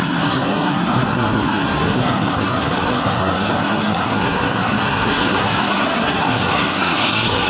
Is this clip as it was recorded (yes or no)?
no